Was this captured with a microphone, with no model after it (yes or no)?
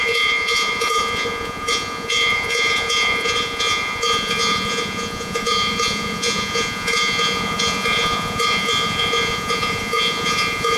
no